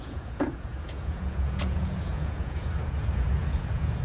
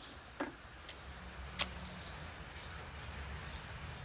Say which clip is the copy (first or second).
first